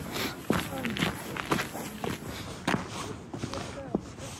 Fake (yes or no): no